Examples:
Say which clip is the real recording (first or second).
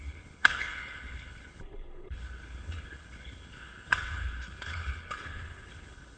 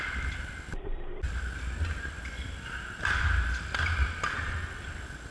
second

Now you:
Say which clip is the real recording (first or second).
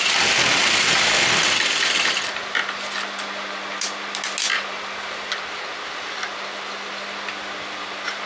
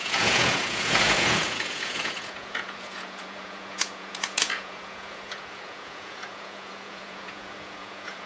first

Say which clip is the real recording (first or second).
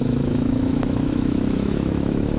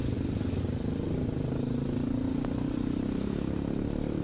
second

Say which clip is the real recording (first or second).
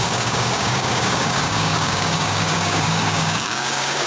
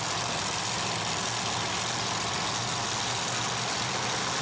second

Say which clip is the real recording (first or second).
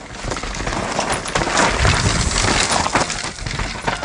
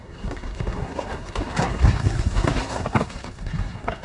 first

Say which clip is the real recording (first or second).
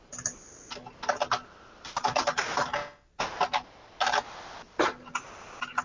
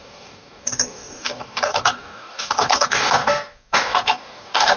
first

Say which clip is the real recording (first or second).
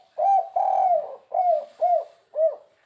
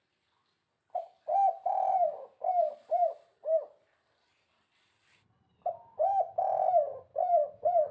first